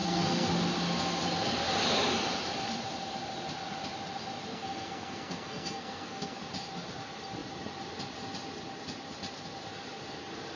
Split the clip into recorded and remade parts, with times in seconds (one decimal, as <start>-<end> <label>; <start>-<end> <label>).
0.0-0.5 remade; 0.5-4.5 recorded; 4.5-6.4 remade; 6.4-10.6 recorded